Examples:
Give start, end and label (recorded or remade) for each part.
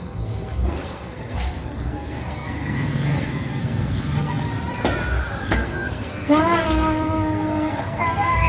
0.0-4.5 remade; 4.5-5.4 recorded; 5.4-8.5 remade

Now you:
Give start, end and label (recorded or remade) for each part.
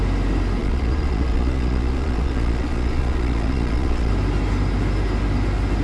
0.0-0.6 recorded; 0.6-4.1 remade; 4.1-5.8 recorded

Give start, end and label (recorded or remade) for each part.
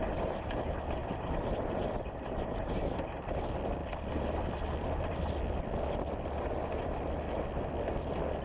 0.0-1.0 recorded; 1.0-2.6 remade; 2.6-3.8 recorded; 3.8-5.4 remade; 5.4-8.4 recorded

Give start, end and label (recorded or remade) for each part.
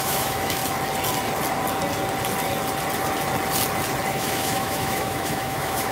0.0-0.6 remade; 0.6-4.1 recorded; 4.1-5.9 remade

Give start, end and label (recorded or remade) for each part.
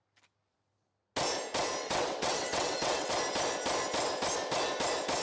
0.0-1.8 recorded; 1.8-3.1 remade; 3.1-5.2 recorded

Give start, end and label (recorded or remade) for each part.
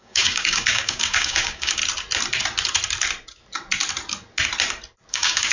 0.0-1.8 remade; 1.8-5.1 recorded; 5.1-5.5 remade